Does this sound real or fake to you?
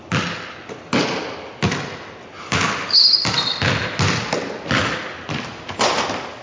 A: real